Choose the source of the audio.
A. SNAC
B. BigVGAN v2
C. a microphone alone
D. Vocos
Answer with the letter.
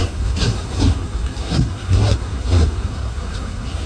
A